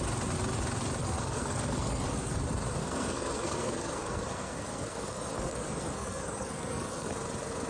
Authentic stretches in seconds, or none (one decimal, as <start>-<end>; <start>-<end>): 0.0-1.0; 2.4-2.8; 7.1-7.7